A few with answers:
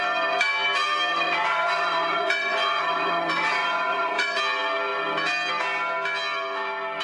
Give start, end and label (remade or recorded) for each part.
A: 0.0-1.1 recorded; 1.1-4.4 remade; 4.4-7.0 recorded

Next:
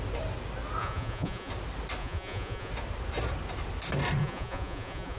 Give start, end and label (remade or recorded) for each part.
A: 0.0-0.8 recorded; 0.8-1.5 remade; 1.5-2.0 recorded; 2.0-2.7 remade; 2.7-4.2 recorded; 4.2-5.2 remade

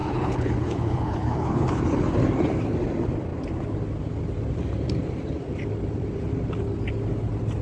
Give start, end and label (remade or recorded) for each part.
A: 0.0-1.8 remade; 1.8-7.6 recorded

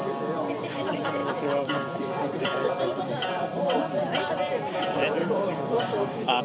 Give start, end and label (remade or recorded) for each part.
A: 0.0-5.2 recorded; 5.2-6.4 remade

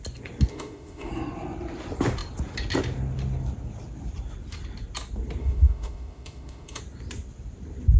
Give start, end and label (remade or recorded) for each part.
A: 0.0-0.5 recorded; 0.5-1.1 remade; 1.1-5.4 recorded; 5.4-6.8 remade; 6.8-8.0 recorded

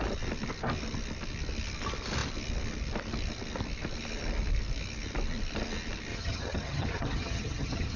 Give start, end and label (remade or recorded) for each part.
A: 0.0-6.1 recorded; 6.1-8.0 remade

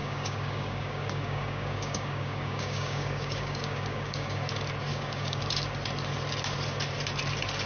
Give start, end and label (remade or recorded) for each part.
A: 0.0-4.5 remade; 4.5-4.9 recorded; 4.9-5.4 remade; 5.4-7.7 recorded